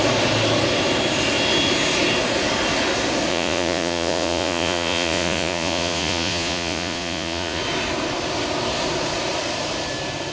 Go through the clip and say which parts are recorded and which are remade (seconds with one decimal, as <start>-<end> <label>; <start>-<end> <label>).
0.0-3.3 recorded; 3.3-7.6 remade; 7.6-10.3 recorded